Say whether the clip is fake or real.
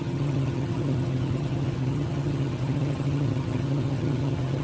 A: fake